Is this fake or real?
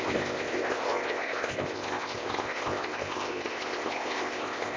fake